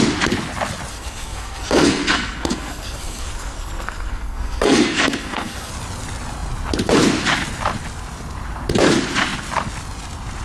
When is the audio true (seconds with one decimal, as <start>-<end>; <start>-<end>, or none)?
0.0-0.9; 5.7-10.4